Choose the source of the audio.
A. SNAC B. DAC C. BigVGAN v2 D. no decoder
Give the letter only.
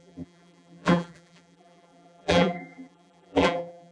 C